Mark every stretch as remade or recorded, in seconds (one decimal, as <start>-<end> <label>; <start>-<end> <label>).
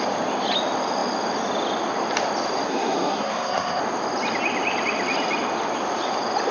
0.0-2.7 recorded; 2.7-3.8 remade; 3.8-6.5 recorded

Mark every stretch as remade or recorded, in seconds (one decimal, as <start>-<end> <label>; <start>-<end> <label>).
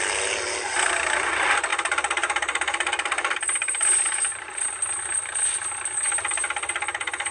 0.0-1.7 recorded; 1.7-4.7 remade; 4.7-7.3 recorded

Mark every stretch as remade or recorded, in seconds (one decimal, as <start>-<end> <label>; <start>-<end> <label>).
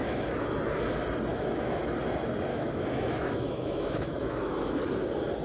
0.0-0.5 remade; 0.5-1.3 recorded; 1.3-1.8 remade; 1.8-2.5 recorded; 2.5-4.8 remade; 4.8-5.4 recorded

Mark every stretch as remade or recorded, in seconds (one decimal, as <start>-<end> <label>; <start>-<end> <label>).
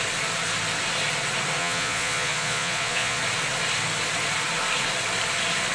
0.0-1.6 recorded; 1.6-3.2 remade; 3.2-5.7 recorded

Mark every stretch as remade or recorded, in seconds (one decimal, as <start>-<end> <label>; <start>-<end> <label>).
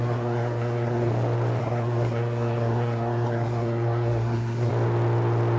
0.0-1.1 remade; 1.1-1.6 recorded; 1.6-4.7 remade; 4.7-5.6 recorded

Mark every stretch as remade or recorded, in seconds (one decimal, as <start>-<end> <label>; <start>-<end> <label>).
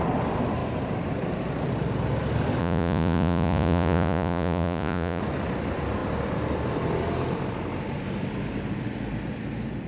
0.0-2.6 recorded; 2.6-5.2 remade; 5.2-9.9 recorded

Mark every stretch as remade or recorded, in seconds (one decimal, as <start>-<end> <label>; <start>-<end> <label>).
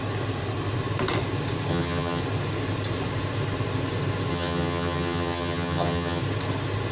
0.0-1.7 recorded; 1.7-2.2 remade; 2.2-4.3 recorded; 4.3-6.2 remade; 6.2-6.9 recorded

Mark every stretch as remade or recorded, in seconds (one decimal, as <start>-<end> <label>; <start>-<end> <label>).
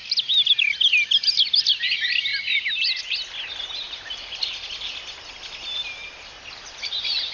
0.0-1.8 recorded; 1.8-2.3 remade; 2.3-6.7 recorded; 6.7-7.3 remade